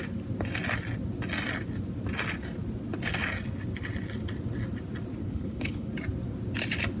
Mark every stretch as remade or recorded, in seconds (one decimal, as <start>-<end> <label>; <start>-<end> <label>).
0.0-5.2 recorded; 5.2-5.9 remade; 5.9-7.0 recorded

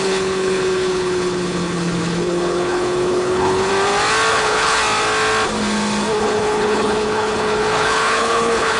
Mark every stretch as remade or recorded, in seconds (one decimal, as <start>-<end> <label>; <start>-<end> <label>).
0.0-3.7 remade; 3.7-4.3 recorded; 4.3-4.8 remade; 4.8-6.2 recorded; 6.2-8.8 remade

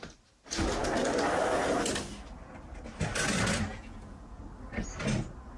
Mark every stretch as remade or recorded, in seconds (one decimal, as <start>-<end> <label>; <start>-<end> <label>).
0.0-3.7 recorded; 3.7-4.4 remade; 4.4-5.6 recorded

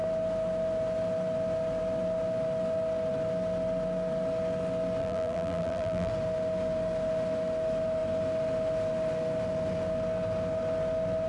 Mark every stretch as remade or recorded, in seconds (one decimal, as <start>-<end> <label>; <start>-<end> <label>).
0.0-5.0 recorded; 5.0-6.1 remade; 6.1-11.3 recorded

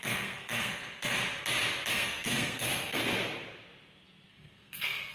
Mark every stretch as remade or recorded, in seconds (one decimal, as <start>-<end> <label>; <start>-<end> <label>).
0.0-1.2 remade; 1.2-1.9 recorded; 1.9-3.0 remade; 3.0-4.3 recorded; 4.3-5.1 remade

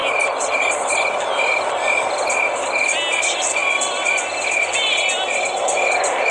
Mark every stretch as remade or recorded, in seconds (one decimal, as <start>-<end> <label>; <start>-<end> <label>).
0.0-3.2 recorded; 3.2-6.3 remade

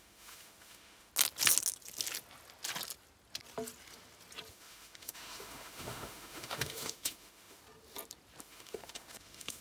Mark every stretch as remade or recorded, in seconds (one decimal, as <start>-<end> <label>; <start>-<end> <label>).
0.0-1.1 remade; 1.1-4.5 recorded; 4.5-7.6 remade; 7.6-8.4 recorded; 8.4-9.6 remade